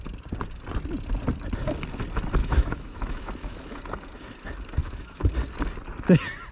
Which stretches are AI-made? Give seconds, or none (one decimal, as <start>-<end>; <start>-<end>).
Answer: 2.4-3.8; 4.8-5.3